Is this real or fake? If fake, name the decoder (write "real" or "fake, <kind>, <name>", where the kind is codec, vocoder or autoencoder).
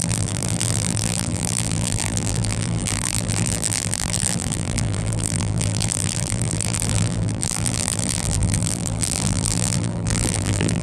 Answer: fake, vocoder, BigVGAN v2